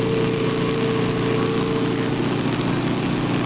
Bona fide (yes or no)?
yes